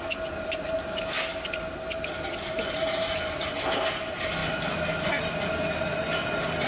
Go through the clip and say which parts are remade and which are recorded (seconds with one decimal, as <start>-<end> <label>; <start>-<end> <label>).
0.0-6.7 recorded